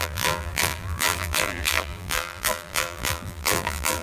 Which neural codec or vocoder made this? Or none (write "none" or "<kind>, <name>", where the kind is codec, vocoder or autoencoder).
vocoder, BigVGAN v2